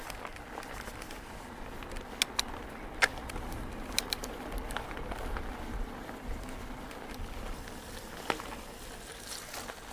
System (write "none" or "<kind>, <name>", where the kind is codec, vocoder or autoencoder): none